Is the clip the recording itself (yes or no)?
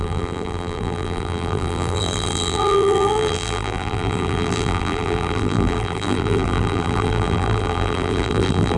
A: no